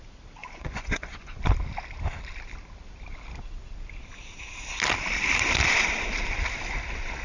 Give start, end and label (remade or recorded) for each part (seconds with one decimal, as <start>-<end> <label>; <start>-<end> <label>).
0.0-0.4 recorded; 0.4-1.4 remade; 1.4-7.2 recorded